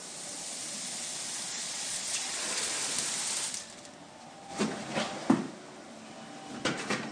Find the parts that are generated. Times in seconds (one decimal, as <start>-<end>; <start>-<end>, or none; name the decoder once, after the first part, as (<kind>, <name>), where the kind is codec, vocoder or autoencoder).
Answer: 1.5-2.7 (vocoder, Vocos)